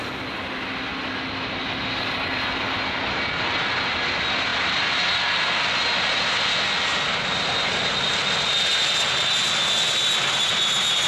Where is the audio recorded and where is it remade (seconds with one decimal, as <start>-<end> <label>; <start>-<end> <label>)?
0.0-11.1 recorded